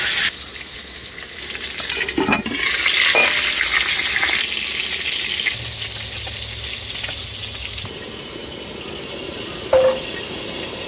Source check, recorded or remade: recorded